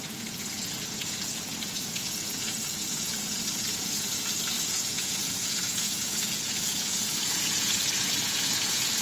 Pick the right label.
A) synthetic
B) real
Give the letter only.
A